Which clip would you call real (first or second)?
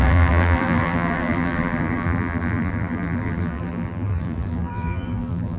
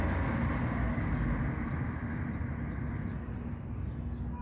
second